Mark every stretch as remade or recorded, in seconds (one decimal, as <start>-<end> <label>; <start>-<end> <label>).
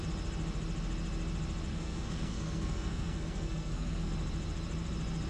0.0-1.7 recorded; 1.7-4.1 remade; 4.1-5.3 recorded